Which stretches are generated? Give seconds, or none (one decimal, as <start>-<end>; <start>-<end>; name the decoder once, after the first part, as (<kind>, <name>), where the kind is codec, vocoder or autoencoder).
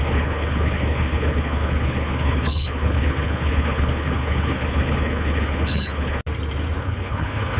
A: 0.0-6.2 (codec, HILCodec); 6.8-7.6